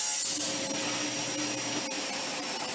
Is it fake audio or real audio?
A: real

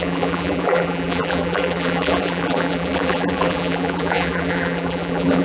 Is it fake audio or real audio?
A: fake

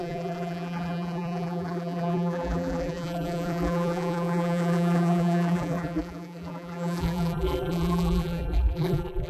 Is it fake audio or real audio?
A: fake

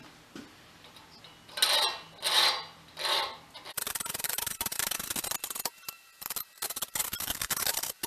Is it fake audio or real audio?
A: real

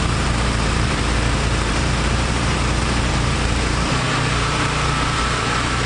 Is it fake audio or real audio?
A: fake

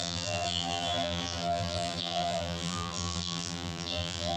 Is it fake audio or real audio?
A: fake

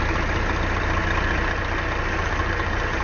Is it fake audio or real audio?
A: real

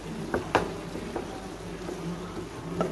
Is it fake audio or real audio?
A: fake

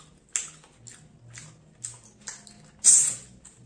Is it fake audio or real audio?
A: real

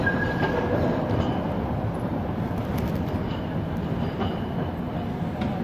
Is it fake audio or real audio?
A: real